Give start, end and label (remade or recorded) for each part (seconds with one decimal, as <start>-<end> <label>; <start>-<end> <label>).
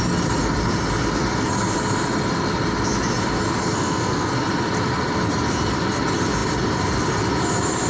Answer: 0.0-3.6 recorded; 3.6-4.3 remade; 4.3-7.9 recorded